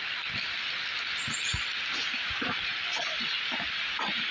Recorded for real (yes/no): yes